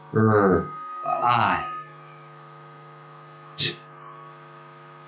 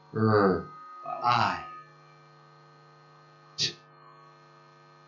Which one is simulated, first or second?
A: first